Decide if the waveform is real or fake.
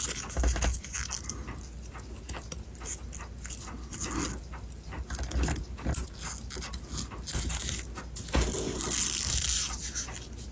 real